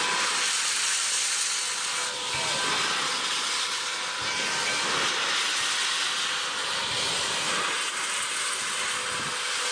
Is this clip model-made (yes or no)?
no